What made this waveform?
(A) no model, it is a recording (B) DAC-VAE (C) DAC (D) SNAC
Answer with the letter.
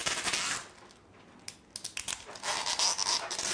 A